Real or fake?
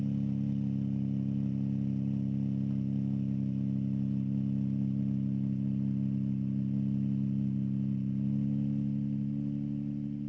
real